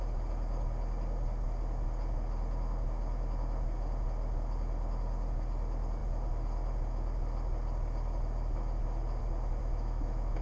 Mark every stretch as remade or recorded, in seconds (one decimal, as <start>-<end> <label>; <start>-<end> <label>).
0.0-9.6 recorded; 9.6-10.4 remade